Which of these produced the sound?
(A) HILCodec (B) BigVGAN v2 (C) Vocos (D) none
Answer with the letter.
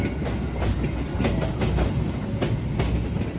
D